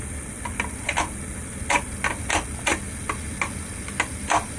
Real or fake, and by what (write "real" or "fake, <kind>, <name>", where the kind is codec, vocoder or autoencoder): real